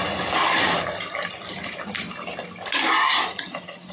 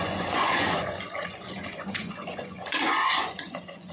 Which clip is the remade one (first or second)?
second